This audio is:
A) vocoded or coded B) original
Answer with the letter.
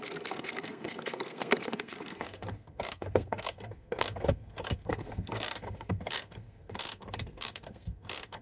A